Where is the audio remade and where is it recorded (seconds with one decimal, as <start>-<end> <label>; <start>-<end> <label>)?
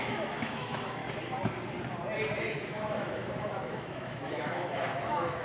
0.0-1.0 remade; 1.0-2.4 recorded; 2.4-5.4 remade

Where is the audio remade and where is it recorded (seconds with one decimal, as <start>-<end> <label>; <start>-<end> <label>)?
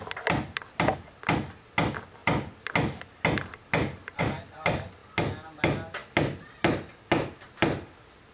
0.0-8.3 recorded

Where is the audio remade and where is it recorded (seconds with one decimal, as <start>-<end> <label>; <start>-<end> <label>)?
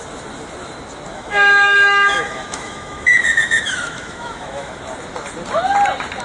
0.0-1.1 recorded; 1.1-4.8 remade; 4.8-6.2 recorded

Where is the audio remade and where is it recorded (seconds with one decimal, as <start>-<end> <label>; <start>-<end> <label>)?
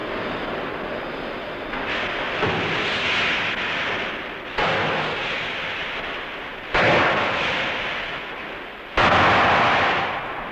0.0-10.5 recorded